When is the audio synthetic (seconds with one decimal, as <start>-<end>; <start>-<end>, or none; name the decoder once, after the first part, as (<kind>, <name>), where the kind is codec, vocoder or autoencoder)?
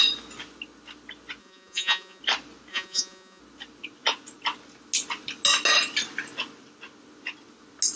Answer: 1.4-2.2 (vocoder, Vocos); 2.7-3.4